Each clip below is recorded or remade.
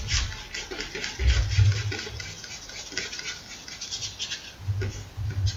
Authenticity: recorded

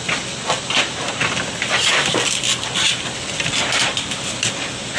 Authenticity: recorded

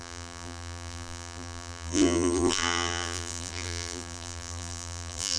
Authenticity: remade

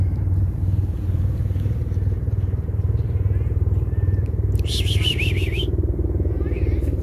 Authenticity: remade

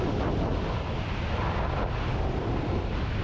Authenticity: remade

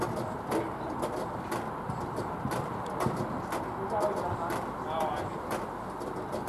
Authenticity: recorded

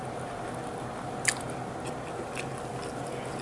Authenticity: recorded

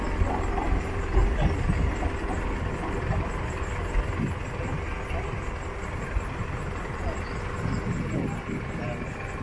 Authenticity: recorded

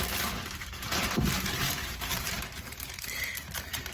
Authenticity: remade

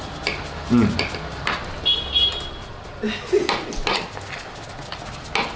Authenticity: recorded